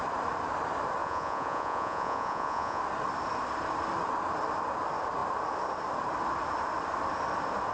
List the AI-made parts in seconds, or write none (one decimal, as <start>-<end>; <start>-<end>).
1.0-2.8